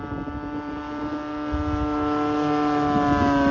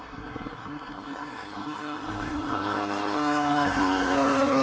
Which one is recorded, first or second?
first